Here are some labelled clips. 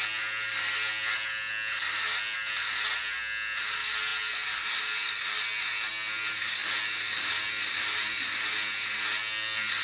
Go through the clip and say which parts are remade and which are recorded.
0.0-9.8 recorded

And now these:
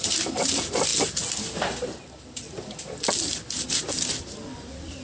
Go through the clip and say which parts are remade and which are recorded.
0.0-5.0 recorded

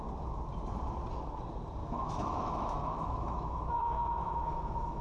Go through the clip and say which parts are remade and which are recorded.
0.0-1.8 recorded; 1.8-5.0 remade